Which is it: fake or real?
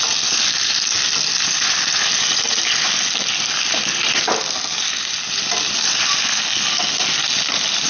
real